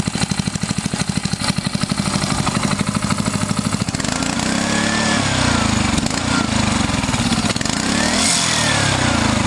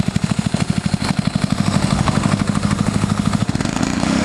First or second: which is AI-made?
second